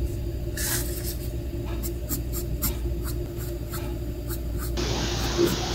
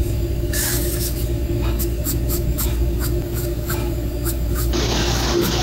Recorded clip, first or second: first